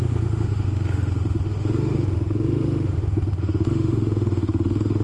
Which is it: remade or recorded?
remade